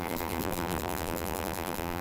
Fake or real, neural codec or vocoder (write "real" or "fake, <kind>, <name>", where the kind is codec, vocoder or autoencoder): fake, vocoder, BigVGAN v2